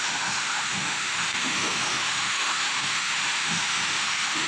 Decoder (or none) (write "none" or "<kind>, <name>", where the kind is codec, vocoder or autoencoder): autoencoder, DAC-VAE